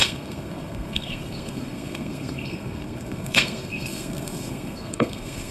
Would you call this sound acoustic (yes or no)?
no